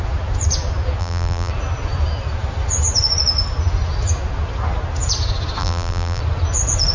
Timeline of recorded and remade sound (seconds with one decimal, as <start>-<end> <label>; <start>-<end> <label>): 0.0-1.0 recorded; 1.0-1.5 remade; 1.5-5.6 recorded; 5.6-6.2 remade; 6.2-6.9 recorded